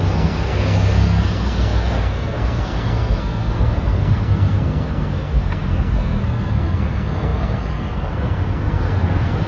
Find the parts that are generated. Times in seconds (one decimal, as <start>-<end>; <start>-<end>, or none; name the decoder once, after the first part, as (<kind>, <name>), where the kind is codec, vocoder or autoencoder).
0.0-9.5 (codec, SNAC)